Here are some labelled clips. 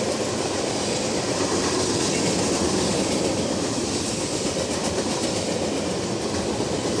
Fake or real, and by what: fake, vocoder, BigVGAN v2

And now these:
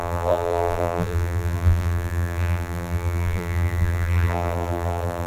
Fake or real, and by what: fake, vocoder, BigVGAN v2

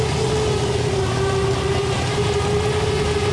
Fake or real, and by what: real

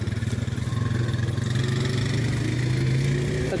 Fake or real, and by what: real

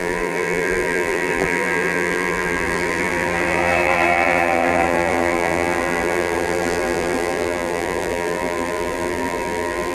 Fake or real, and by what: fake, vocoder, BigVGAN v2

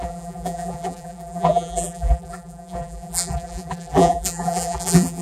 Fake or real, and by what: fake, vocoder, BigVGAN v2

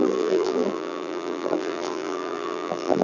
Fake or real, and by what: fake, vocoder, BigVGAN v2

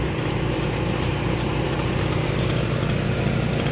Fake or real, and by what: fake, vocoder, BigVGAN v2